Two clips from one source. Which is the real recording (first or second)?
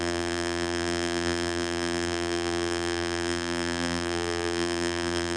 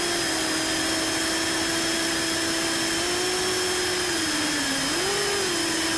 second